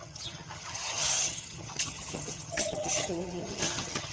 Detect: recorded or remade remade